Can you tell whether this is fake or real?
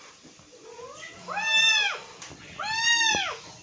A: real